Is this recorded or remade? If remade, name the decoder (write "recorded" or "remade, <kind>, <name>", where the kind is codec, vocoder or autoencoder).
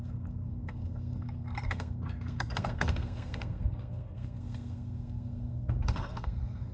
remade, codec, SNAC